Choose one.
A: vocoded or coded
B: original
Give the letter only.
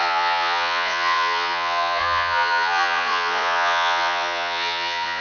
A